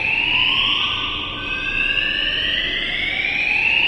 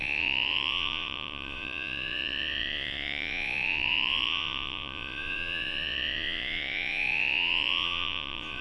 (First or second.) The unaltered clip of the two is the first